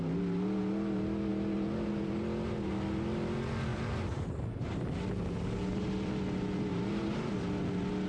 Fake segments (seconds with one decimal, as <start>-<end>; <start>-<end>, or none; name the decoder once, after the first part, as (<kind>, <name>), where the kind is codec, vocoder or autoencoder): 3.7-4.7 (vocoder, BigVGAN v2); 6.7-7.3